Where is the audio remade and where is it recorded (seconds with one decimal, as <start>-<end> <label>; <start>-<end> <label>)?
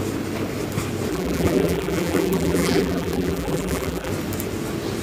0.0-1.1 recorded; 1.1-4.1 remade; 4.1-5.0 recorded